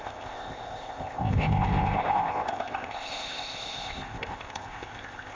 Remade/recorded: remade